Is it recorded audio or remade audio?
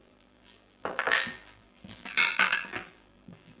remade